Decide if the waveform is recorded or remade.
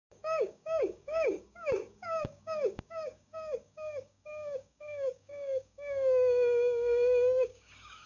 remade